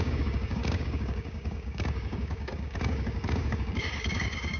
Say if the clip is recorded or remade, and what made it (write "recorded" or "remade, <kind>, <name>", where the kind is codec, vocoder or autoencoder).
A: remade, codec, DAC